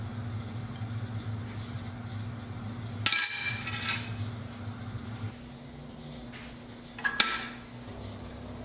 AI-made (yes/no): no